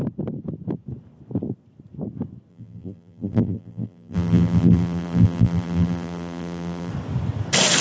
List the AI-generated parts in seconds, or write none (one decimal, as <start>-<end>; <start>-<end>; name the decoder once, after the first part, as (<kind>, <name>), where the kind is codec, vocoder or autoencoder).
2.5-6.9 (vocoder, BigVGAN v2)